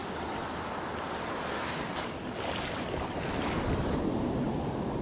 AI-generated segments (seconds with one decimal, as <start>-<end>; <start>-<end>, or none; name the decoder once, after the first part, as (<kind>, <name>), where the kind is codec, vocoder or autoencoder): none